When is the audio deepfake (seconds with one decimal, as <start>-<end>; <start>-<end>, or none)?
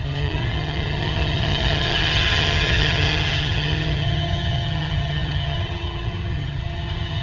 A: 0.0-7.2